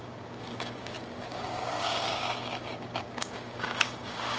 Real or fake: fake